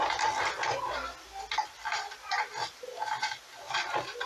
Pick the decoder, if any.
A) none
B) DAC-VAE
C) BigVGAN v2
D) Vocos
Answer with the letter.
A